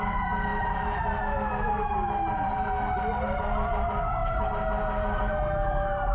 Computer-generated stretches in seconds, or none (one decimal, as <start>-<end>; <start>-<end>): 0.5-1.0; 1.7-2.7